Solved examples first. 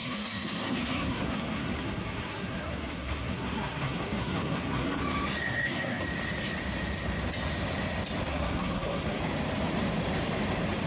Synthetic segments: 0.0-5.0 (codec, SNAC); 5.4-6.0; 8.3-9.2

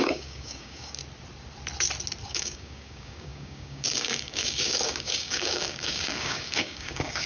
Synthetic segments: 0.0-1.0 (codec, DAC); 2.3-7.3

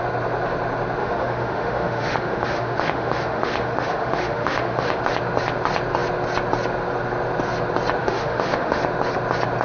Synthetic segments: 1.0-5.0 (autoencoder, DAC-VAE); 8.0-8.8

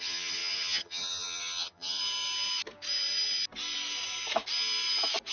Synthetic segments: 0.0-2.0 (vocoder, HiFi-GAN)

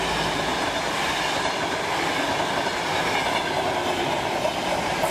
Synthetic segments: 0.5-1.8 (vocoder, BigVGAN v2)